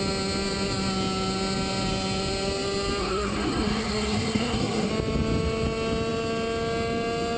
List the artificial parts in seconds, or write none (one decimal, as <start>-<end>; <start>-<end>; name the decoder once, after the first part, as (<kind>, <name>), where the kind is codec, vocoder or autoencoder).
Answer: 3.0-4.9 (codec, SNAC)